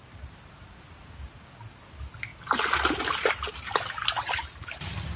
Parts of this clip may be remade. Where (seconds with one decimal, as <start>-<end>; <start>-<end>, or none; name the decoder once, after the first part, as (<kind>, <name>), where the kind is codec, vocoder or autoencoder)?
none